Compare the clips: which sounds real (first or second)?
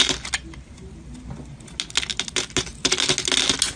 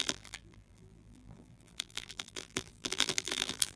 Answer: first